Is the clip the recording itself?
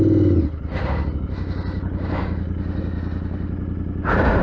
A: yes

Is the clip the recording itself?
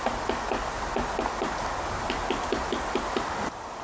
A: yes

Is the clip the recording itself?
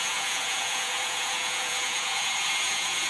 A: no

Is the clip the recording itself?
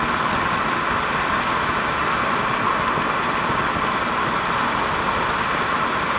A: yes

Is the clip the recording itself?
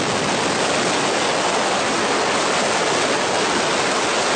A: yes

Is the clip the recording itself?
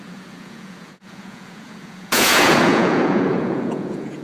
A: no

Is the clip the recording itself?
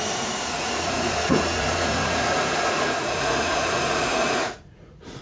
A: no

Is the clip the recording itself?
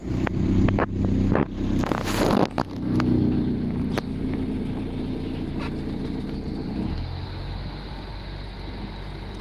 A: yes